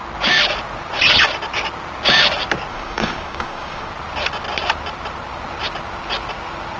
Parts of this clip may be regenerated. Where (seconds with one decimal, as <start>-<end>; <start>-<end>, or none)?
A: 2.7-3.9